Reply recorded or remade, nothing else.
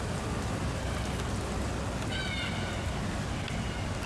recorded